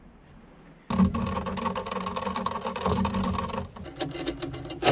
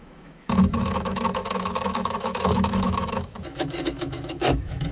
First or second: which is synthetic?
second